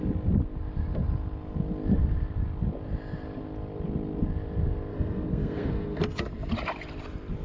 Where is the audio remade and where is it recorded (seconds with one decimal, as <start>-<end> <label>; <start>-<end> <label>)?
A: 0.0-4.9 recorded; 4.9-6.0 remade; 6.0-7.4 recorded